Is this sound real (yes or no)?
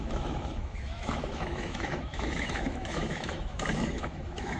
no